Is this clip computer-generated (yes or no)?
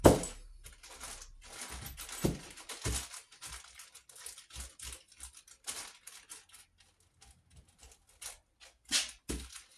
no